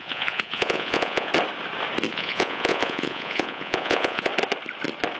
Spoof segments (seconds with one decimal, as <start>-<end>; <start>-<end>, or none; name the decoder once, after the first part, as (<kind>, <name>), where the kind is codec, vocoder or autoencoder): 0.0-1.3 (vocoder, Vocos); 2.1-4.3